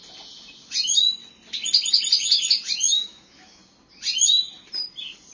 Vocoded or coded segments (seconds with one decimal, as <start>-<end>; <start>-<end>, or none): 2.9-3.6